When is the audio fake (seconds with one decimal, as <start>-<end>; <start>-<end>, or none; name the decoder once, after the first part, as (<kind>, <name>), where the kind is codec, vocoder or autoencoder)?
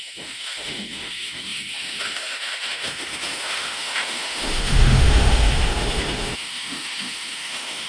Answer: 0.0-7.9 (autoencoder, DAC-VAE)